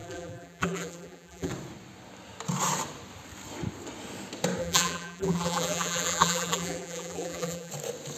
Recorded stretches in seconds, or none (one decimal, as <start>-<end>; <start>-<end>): 1.5-4.6; 7.7-8.2